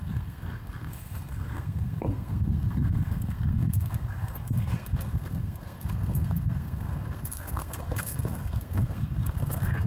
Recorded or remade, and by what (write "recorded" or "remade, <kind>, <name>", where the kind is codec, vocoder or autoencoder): remade, codec, SNAC